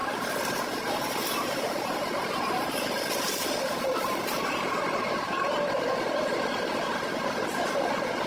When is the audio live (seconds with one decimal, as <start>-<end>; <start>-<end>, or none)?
4.6-6.9; 7.9-8.3